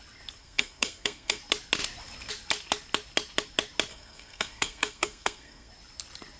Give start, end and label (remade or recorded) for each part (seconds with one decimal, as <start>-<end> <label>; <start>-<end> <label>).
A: 0.0-0.4 recorded; 0.4-1.4 remade; 1.4-3.9 recorded; 3.9-5.7 remade; 5.7-6.4 recorded